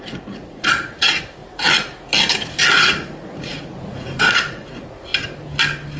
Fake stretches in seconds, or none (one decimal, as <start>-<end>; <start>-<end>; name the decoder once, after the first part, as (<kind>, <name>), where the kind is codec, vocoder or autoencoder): 0.0-1.4 (vocoder, Vocos); 2.8-5.1